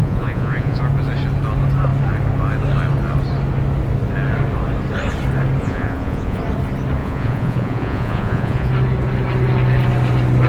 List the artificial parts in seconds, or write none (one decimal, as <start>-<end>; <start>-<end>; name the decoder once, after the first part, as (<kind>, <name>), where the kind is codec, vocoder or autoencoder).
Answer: 0.0-0.8 (vocoder, Vocos); 5.6-6.4; 7.0-8.7